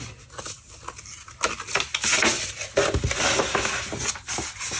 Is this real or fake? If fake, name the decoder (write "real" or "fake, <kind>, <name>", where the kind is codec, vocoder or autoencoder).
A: real